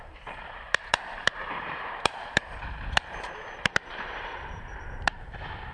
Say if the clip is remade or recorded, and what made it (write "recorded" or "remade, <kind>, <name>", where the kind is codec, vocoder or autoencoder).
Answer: remade, vocoder, BigVGAN v2